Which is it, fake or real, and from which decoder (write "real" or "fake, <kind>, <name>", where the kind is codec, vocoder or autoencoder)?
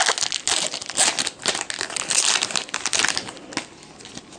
real